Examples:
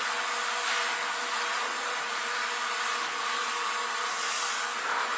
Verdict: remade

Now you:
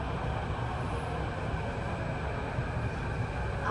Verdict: recorded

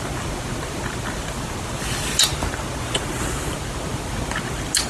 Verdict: recorded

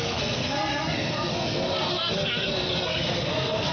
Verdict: remade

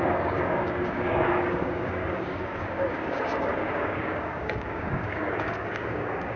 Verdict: remade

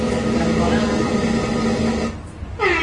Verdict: recorded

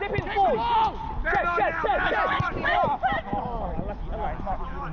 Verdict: recorded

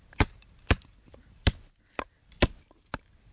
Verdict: recorded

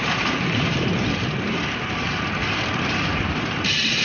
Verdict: remade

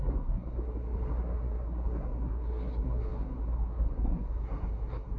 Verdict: remade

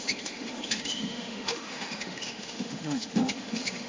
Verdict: remade